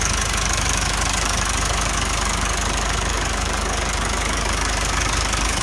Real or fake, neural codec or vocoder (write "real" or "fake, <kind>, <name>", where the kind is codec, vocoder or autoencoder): fake, codec, DAC